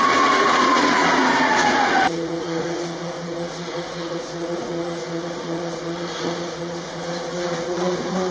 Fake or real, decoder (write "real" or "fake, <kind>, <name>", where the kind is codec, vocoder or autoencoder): fake, vocoder, Vocos